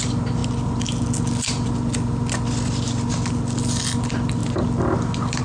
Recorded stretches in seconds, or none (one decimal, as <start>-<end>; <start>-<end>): 0.0-5.4